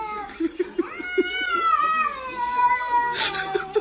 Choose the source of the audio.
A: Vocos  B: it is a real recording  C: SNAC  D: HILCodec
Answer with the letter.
B